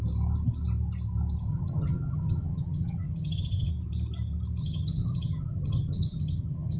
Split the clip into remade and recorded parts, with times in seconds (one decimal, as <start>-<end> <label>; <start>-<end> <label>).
0.0-1.5 recorded; 1.5-3.7 remade; 3.7-4.6 recorded; 4.6-6.8 remade